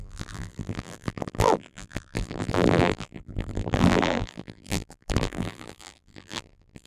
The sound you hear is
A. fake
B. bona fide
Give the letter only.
A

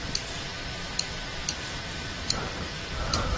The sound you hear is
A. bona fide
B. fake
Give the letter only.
B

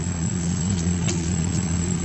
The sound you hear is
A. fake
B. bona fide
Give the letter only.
A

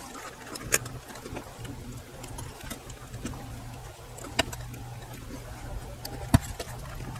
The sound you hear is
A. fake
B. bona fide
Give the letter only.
B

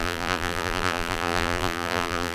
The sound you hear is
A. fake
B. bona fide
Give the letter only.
A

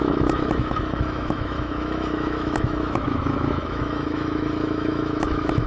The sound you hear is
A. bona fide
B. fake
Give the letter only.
B